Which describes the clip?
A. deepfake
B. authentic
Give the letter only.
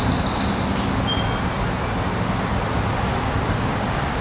B